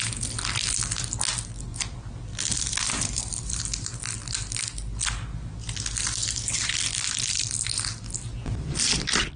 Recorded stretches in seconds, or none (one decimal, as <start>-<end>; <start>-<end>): 0.0-1.7; 3.6-9.4